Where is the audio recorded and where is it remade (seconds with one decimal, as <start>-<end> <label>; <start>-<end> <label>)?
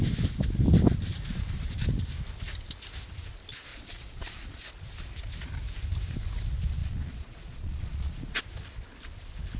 0.0-3.7 recorded; 3.7-4.6 remade; 4.6-6.8 recorded; 6.8-8.4 remade; 8.4-9.6 recorded